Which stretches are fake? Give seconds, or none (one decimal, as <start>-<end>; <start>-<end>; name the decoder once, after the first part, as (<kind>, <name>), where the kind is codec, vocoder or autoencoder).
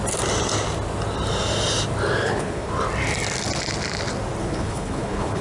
2.2-2.7 (codec, HILCodec); 4.4-5.4